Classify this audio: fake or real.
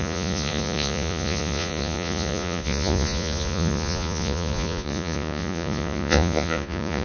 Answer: fake